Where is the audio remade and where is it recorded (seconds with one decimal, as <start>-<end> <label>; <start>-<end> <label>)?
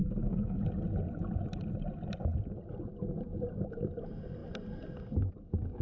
0.0-0.6 remade; 0.6-5.8 recorded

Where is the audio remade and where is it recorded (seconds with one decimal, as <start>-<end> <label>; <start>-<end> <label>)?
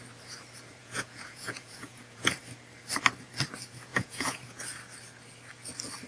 0.0-0.8 recorded; 0.8-2.3 remade; 2.3-3.9 recorded; 3.9-4.6 remade; 4.6-6.1 recorded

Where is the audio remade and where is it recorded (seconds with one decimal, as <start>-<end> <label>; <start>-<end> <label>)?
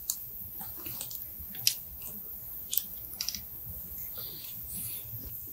0.0-5.5 recorded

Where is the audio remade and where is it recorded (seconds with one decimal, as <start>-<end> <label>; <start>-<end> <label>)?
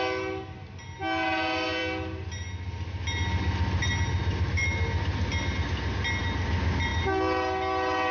0.0-8.1 recorded